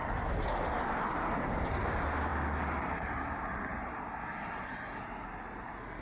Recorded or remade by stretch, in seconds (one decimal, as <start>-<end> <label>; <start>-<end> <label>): 0.0-6.0 recorded